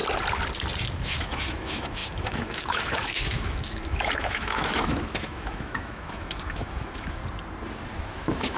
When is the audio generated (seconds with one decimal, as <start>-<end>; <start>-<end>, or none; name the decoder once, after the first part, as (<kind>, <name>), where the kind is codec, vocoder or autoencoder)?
0.9-7.2 (autoencoder, DAC-VAE); 8.0-8.6